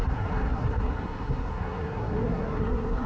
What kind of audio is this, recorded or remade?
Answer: remade